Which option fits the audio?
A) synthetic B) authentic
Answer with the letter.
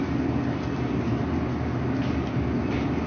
B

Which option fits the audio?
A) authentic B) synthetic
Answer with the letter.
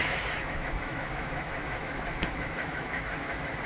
B